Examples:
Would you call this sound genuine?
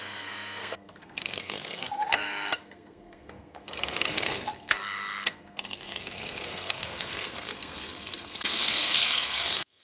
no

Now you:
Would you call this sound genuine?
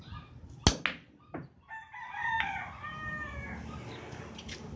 yes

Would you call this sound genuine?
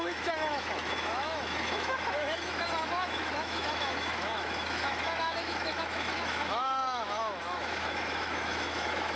no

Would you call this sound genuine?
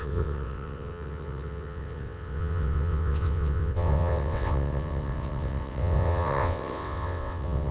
no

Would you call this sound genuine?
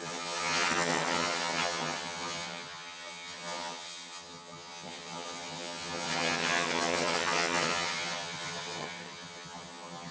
no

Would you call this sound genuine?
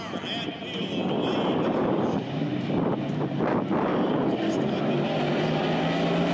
yes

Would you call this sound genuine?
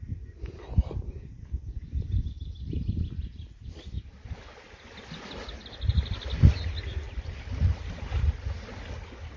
yes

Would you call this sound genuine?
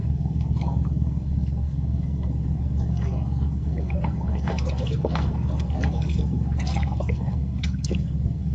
no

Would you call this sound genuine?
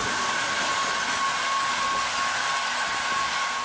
yes